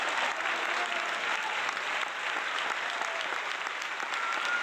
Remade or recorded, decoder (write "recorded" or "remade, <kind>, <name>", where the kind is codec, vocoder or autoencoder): recorded